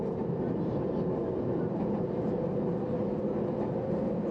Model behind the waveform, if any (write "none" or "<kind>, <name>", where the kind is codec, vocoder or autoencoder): none